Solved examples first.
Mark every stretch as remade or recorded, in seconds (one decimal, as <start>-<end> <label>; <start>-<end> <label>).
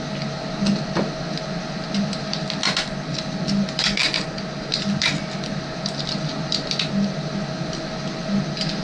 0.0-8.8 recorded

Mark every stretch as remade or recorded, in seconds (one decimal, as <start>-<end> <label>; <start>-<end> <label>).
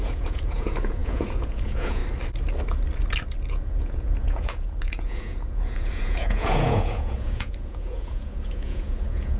0.0-2.0 remade; 2.0-3.5 recorded; 3.5-9.4 remade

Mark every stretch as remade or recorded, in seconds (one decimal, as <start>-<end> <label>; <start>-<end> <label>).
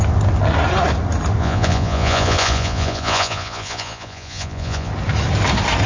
0.0-1.4 recorded; 1.4-4.9 remade; 4.9-5.9 recorded